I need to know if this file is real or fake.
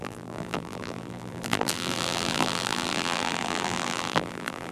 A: fake